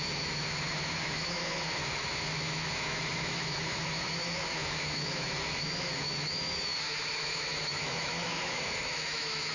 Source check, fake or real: fake